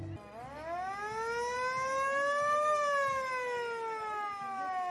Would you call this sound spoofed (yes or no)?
no